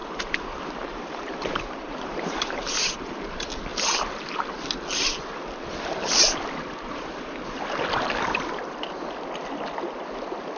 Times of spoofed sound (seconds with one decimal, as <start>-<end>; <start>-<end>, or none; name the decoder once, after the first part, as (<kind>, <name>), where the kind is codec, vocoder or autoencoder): 0.0-3.0 (vocoder, BigVGAN v2)